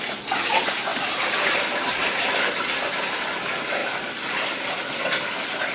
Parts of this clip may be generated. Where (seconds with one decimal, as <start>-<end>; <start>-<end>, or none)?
0.9-2.0